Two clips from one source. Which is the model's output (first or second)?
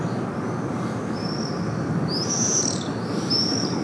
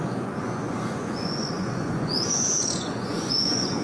second